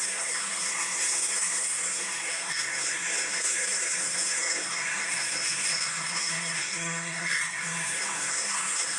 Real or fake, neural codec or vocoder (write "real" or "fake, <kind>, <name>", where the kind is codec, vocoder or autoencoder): fake, codec, SNAC